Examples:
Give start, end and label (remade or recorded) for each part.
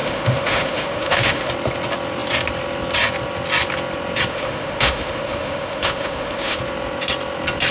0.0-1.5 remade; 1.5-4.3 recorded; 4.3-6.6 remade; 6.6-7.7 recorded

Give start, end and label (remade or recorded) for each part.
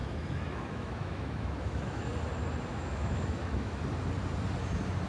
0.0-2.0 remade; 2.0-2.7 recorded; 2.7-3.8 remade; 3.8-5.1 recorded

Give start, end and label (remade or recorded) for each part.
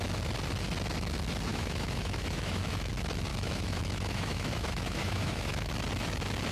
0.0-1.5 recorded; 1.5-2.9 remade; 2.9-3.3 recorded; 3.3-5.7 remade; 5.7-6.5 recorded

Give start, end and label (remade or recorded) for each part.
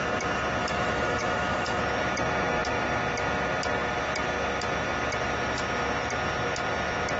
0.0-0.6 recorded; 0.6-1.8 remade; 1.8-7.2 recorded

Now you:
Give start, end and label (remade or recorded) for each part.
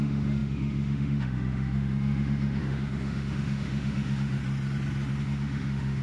0.0-4.4 remade; 4.4-5.2 recorded; 5.2-6.0 remade